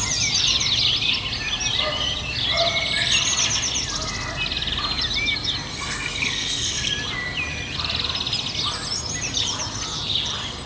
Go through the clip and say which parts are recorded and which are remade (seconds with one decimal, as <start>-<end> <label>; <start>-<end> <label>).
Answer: 0.0-5.7 recorded; 5.7-6.9 remade; 6.9-10.7 recorded